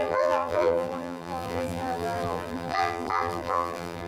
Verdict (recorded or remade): remade